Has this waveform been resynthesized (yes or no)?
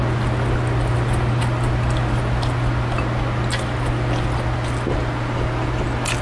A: no